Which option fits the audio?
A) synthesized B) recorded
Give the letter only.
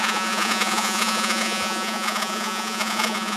A